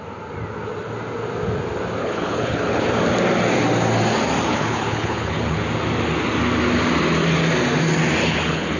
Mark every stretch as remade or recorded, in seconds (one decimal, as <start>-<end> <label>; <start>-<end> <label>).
0.0-2.0 recorded; 2.0-2.9 remade; 2.9-4.5 recorded; 4.5-5.6 remade; 5.6-8.2 recorded; 8.2-8.8 remade